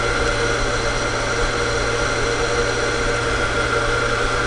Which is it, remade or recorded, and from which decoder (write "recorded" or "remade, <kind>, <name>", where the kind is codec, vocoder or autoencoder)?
recorded